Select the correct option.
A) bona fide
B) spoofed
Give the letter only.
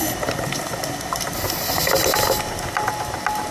A